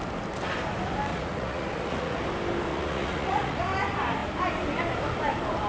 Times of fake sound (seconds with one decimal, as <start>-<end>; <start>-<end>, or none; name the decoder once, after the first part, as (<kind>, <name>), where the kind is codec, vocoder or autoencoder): 1.1-2.2 (vocoder, Vocos); 2.7-3.6